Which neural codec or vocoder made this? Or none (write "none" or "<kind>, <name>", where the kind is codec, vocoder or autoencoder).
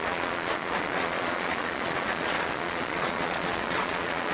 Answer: vocoder, Vocos